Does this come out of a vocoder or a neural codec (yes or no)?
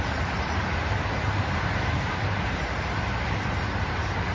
yes